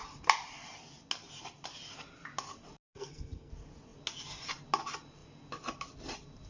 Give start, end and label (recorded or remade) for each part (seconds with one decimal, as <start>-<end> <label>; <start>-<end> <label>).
0.0-2.9 recorded; 2.9-3.5 remade; 3.5-6.5 recorded